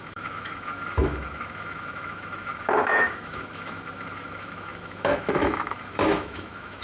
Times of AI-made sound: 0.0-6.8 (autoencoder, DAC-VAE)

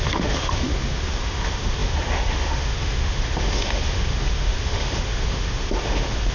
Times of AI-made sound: 0.0-6.3 (autoencoder, DAC-VAE)

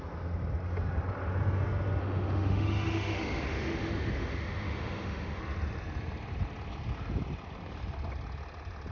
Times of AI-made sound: 2.0-5.4 (autoencoder, DAC-VAE)

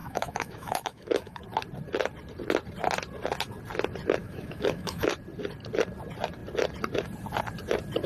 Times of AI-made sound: 0.0-1.4 (autoencoder, DAC-VAE); 4.2-5.1